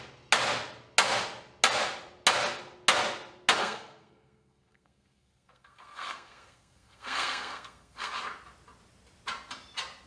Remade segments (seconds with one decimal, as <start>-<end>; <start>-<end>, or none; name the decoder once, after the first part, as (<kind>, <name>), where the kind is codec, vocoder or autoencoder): 3.6-8.1 (codec, SNAC)